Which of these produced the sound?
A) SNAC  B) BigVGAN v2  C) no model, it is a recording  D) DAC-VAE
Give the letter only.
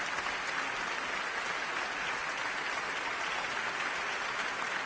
C